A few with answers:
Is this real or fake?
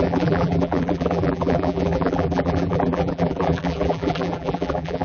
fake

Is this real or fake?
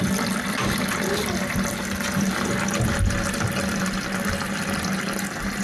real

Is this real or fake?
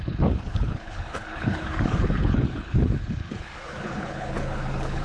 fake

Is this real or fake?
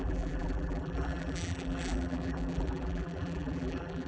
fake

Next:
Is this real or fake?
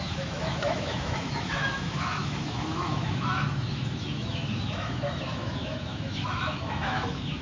fake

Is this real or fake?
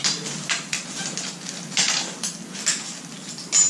real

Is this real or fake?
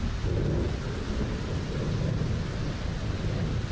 real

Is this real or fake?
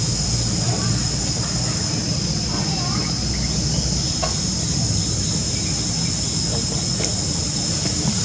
real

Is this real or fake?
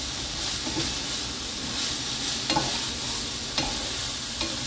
real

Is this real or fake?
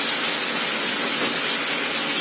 real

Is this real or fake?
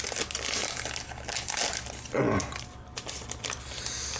real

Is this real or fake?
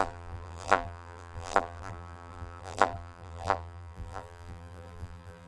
fake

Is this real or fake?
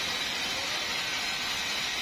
real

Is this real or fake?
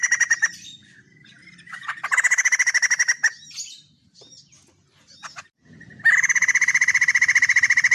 real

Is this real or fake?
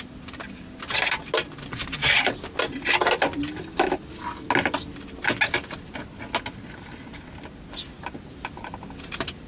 real